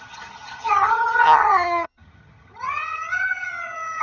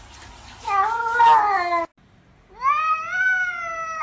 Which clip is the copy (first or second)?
first